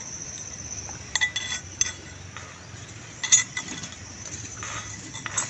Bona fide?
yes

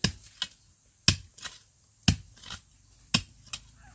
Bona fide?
yes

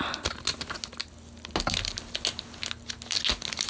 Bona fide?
yes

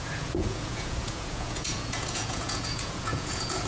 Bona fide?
no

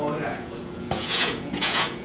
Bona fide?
no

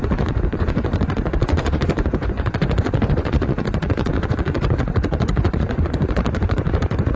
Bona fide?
no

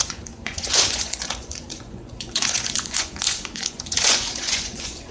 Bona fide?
no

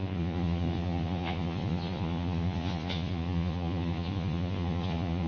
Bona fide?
no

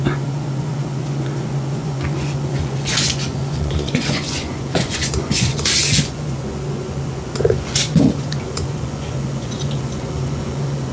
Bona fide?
no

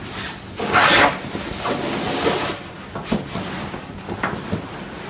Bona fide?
yes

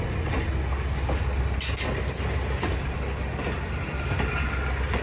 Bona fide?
yes